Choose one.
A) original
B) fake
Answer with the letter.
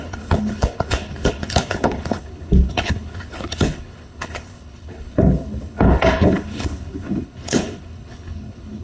B